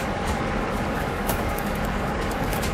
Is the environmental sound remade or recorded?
remade